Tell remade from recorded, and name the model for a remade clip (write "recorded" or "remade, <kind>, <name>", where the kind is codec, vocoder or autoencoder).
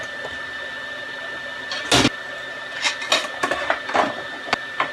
recorded